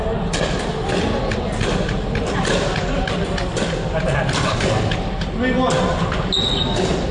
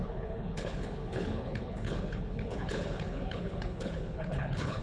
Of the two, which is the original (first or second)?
first